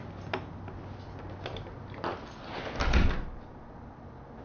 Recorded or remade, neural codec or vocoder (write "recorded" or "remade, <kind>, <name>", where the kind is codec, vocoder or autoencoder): recorded